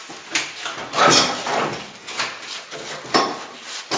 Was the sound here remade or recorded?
recorded